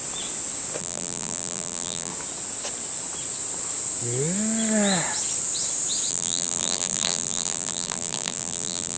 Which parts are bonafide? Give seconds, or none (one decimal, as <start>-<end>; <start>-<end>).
0.0-0.8; 2.1-6.1